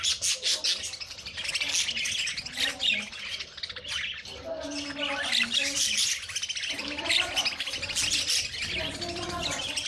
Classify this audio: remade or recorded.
recorded